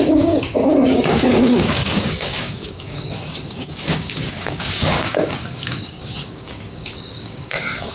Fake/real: fake